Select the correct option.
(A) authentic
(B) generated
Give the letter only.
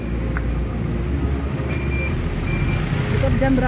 A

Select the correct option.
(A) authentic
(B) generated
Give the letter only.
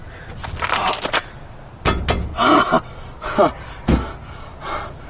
A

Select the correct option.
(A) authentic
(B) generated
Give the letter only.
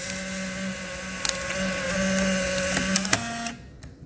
A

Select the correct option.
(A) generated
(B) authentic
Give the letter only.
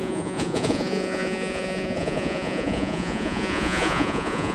A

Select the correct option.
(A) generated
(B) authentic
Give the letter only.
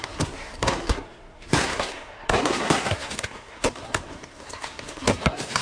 A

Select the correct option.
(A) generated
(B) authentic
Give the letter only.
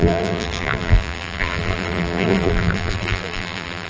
A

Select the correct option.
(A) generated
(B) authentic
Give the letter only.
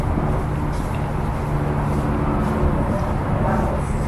B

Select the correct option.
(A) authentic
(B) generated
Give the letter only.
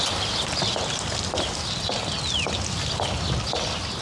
A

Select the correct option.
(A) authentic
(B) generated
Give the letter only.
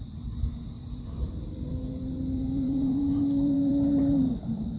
B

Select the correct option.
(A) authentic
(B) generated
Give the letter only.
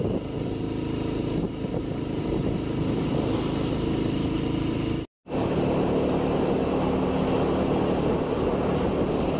A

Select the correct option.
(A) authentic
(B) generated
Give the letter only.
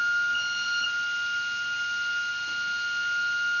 A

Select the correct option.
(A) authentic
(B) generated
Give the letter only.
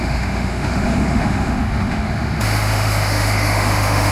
B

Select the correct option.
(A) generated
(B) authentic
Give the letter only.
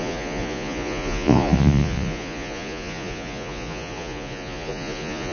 A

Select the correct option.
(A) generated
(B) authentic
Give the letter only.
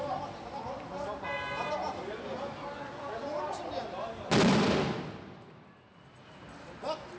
B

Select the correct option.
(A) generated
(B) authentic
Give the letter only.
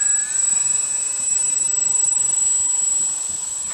B